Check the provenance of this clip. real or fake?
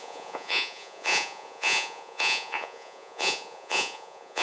fake